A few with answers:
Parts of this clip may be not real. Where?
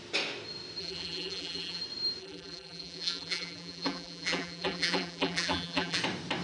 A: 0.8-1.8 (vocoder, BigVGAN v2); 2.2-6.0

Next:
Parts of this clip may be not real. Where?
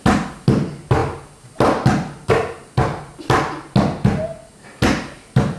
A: none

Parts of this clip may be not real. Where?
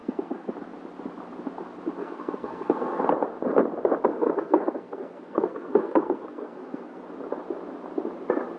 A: 0.0-0.5 (codec, SNAC); 2.0-3.0; 4.1-7.0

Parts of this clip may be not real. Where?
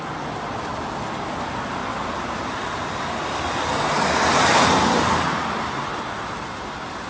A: none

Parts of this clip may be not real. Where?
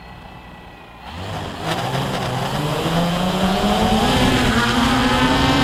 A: 2.7-3.9 (vocoder, Vocos)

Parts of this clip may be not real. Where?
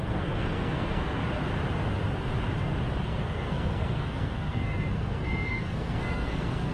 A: 0.0-1.2 (codec, SNAC); 3.0-6.7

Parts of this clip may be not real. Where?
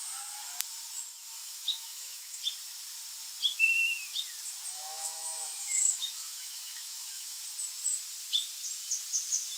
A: 1.4-2.4 (autoencoder, DAC-VAE); 4.7-7.4